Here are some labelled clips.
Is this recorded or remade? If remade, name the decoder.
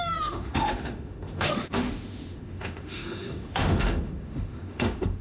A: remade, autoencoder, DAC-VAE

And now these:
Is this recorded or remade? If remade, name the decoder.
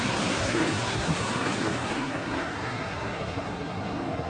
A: remade, codec, SNAC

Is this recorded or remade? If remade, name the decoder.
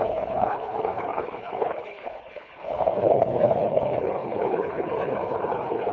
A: remade, codec, HILCodec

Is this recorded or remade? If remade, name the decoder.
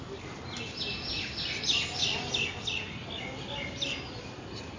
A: recorded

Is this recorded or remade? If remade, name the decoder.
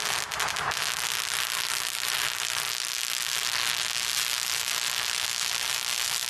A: recorded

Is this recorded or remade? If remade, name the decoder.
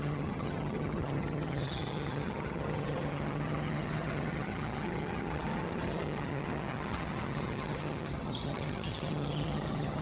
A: remade, vocoder, HiFi-GAN